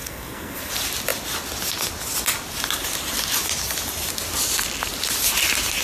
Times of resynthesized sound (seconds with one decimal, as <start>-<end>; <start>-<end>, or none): 0.0-0.7